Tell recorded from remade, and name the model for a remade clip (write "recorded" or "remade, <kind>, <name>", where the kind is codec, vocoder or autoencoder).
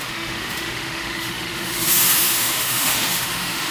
remade, autoencoder, DAC-VAE